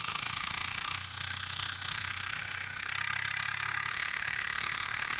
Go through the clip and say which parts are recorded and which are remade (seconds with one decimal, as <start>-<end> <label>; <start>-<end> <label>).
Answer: 0.0-2.9 remade; 2.9-3.9 recorded; 3.9-5.2 remade